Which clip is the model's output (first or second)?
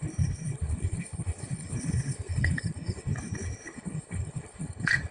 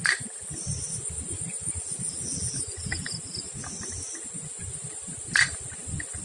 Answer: first